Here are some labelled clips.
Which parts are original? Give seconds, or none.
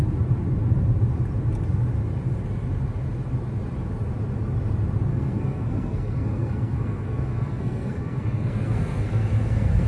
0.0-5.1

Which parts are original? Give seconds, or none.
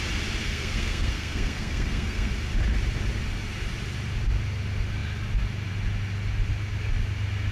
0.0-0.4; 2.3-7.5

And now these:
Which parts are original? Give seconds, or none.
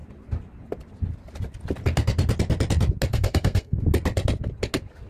0.0-3.1; 3.8-5.1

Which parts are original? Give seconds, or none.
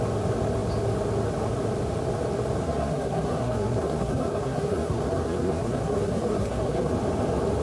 0.0-2.6; 6.9-7.6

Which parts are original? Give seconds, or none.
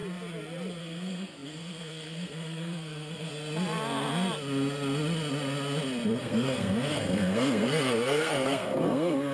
0.0-0.8; 3.3-6.2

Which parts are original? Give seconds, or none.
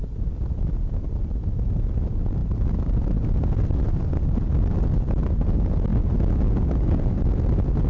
0.0-7.9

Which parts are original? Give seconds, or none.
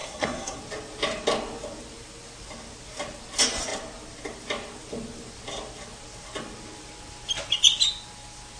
0.6-8.6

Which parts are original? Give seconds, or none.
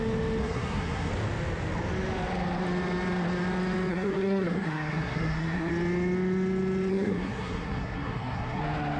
0.0-0.4; 1.1-3.9; 5.7-6.9; 8.6-9.0